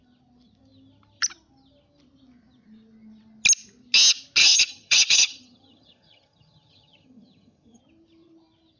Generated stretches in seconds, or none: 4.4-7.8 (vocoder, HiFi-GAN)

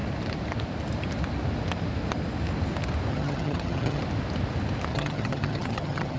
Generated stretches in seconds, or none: 3.1-4.0 (vocoder, HiFi-GAN); 4.9-6.2

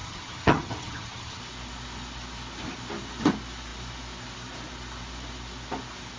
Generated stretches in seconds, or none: 0.0-1.4 (vocoder, HiFi-GAN)

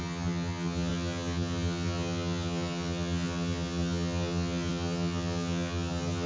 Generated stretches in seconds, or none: 0.0-6.3 (vocoder, HiFi-GAN)

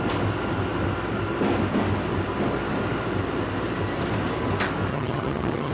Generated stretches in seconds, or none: 4.9-5.7 (vocoder, HiFi-GAN)